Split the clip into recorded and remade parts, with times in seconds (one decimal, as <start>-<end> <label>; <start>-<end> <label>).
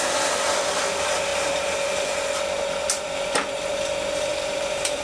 0.0-1.3 remade; 1.3-4.3 recorded; 4.3-5.0 remade